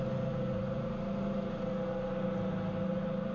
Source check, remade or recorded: recorded